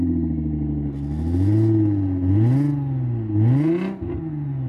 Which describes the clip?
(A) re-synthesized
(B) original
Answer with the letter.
B